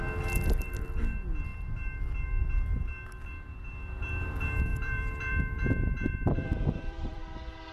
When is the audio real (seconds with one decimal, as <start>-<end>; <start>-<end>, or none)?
0.0-4.7; 7.2-7.7